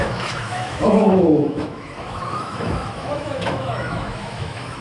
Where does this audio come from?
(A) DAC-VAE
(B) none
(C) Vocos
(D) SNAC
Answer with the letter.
A